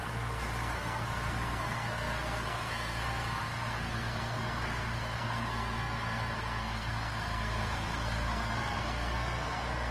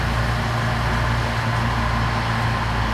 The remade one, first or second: first